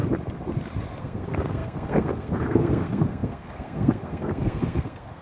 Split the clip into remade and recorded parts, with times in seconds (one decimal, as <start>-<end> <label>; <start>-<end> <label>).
0.0-1.0 recorded; 1.0-5.2 remade